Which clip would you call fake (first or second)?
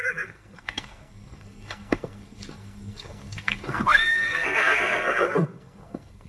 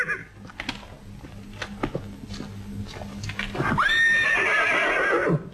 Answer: first